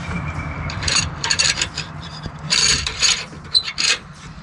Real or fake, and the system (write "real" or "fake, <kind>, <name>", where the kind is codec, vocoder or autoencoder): fake, vocoder, BigVGAN v2